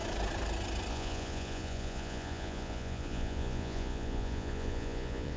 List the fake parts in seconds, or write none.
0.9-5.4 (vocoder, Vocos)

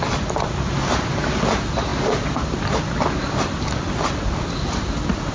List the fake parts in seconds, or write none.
none

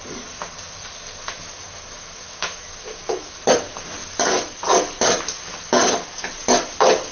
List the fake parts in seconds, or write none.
1.2-3.4 (autoencoder, DAC-VAE)

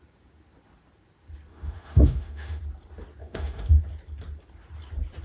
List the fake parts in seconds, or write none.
1.5-2.6 (autoencoder, DAC-VAE); 3.2-3.8

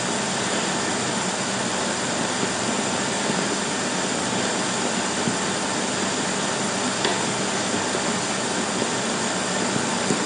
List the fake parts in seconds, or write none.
0.0-7.1 (vocoder, BigVGAN v2); 8.8-10.3